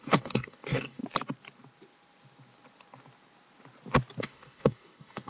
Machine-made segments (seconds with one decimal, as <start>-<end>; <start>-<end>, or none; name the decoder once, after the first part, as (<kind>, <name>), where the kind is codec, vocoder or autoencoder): 0.0-1.0 (codec, DAC); 4.2-5.3

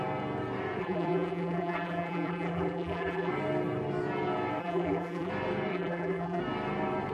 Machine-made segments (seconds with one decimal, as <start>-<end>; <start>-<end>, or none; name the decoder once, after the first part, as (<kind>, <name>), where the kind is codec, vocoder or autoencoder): 0.8-3.3 (vocoder, BigVGAN v2); 4.6-5.3; 5.7-6.4

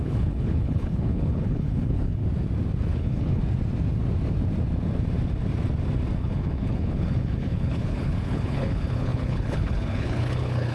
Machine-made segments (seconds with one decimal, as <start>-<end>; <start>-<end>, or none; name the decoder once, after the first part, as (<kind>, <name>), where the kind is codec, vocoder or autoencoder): 0.0-2.2 (codec, HILCodec); 2.9-3.4; 6.2-10.7

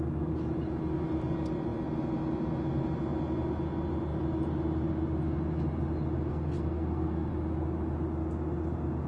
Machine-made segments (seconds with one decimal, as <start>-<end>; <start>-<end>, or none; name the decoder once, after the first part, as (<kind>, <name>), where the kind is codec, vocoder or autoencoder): 6.3-7.3 (codec, SNAC)